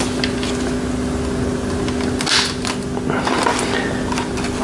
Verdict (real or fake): real